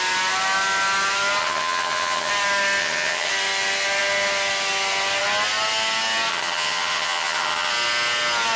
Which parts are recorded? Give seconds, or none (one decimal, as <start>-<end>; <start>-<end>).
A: 0.0-1.4; 2.3-2.8; 3.3-6.3; 7.7-8.6